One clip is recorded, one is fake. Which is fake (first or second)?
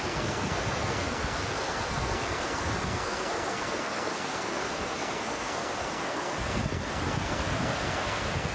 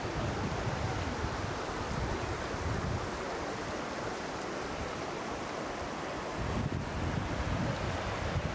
first